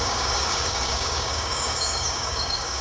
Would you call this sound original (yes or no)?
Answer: no